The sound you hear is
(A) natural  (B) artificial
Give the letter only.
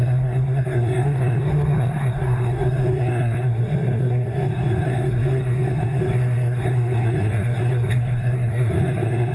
B